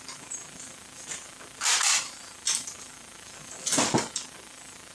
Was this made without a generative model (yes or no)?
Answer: yes